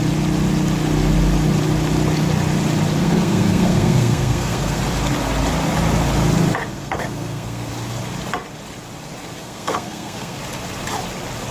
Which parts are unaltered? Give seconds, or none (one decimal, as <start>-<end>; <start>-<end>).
0.0-3.0; 4.8-6.7; 7.7-9.4; 10.4-11.5